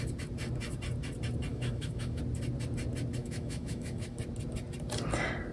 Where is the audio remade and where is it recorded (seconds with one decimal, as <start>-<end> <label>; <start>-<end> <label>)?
0.0-1.5 recorded; 1.5-2.2 remade; 2.2-3.2 recorded; 3.2-4.2 remade; 4.2-5.5 recorded